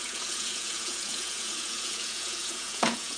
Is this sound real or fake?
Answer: fake